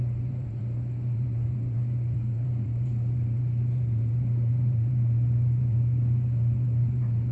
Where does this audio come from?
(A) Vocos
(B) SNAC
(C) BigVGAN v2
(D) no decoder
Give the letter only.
C